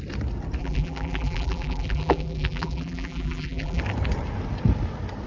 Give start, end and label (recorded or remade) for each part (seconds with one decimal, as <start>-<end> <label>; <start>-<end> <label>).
0.0-0.6 recorded; 0.6-3.8 remade; 3.8-5.3 recorded